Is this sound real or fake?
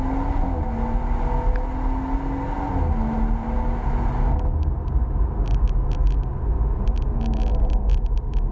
real